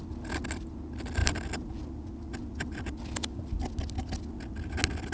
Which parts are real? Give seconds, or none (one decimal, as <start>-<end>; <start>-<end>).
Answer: 0.0-5.1